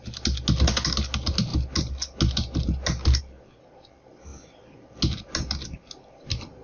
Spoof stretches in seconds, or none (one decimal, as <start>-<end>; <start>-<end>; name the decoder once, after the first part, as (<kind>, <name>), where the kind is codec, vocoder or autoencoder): none